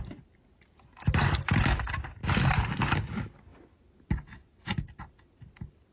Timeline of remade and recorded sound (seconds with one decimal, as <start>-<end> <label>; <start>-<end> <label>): 0.0-2.2 recorded; 2.2-2.7 remade; 2.7-5.9 recorded